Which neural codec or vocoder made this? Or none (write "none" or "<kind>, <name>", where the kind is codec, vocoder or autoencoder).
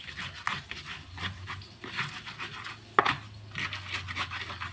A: none